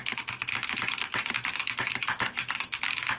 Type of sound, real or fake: real